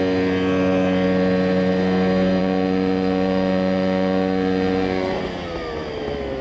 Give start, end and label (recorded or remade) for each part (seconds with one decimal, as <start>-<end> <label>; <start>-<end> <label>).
0.0-2.4 recorded; 2.4-5.2 remade; 5.2-6.4 recorded